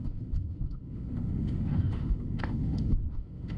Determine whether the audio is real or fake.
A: fake